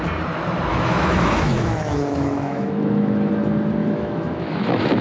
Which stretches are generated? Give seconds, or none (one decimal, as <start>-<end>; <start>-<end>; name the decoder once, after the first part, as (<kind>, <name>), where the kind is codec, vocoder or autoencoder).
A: 0.7-3.3 (autoencoder, DAC-VAE); 3.8-5.0